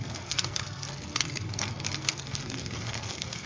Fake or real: fake